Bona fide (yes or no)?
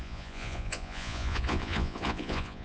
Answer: no